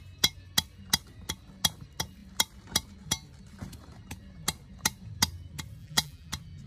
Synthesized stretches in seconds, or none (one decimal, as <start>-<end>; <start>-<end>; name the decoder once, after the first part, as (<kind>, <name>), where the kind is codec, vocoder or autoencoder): 5.8-6.3 (vocoder, BigVGAN v2)